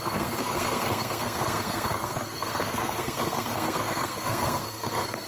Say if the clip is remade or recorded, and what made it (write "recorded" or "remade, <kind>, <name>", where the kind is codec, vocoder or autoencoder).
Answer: remade, codec, SNAC